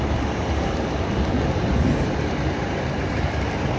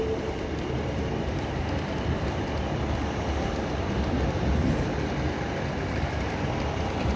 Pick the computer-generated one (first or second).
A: first